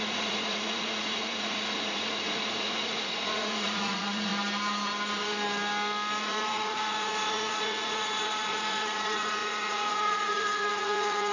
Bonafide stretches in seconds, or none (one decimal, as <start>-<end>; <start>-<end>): 4.3-6.2